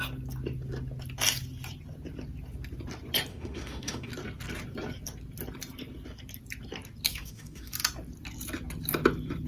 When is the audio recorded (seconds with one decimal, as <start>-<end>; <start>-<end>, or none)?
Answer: 0.0-3.3; 4.1-7.1; 7.7-9.5